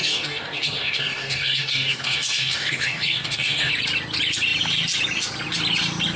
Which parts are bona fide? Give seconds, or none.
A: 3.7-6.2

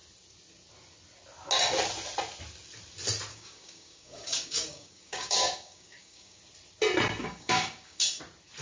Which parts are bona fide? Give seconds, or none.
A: 0.0-3.3; 6.4-7.2; 8.2-8.6

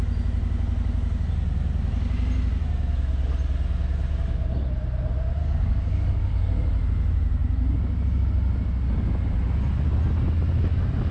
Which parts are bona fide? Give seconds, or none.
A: 0.0-5.4; 6.3-11.1

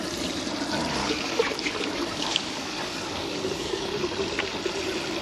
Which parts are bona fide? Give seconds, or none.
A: 0.0-1.0; 3.9-5.2

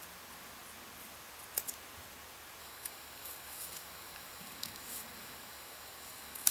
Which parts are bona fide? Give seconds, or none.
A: 0.0-2.6

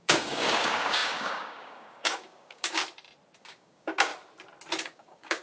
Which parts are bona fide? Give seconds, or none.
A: 2.8-3.4; 4.1-4.8

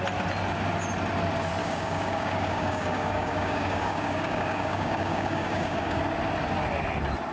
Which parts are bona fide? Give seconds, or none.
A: 0.0-1.6; 6.0-7.3

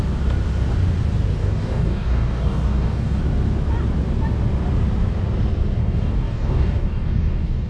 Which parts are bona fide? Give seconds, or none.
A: 0.0-1.4; 3.2-5.8